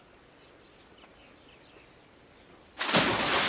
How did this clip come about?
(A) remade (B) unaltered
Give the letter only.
B